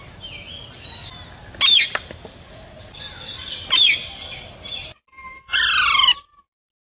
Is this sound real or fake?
real